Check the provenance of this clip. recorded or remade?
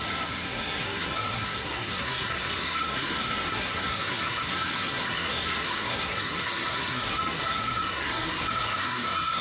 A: remade